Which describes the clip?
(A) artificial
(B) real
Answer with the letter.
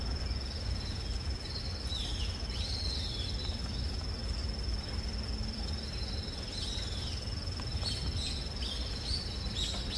B